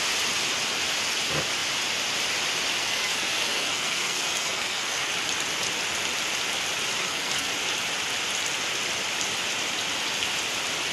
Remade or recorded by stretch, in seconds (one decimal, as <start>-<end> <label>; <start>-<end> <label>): 0.0-2.8 recorded; 2.8-5.1 remade; 5.1-7.0 recorded; 7.0-7.5 remade; 7.5-10.9 recorded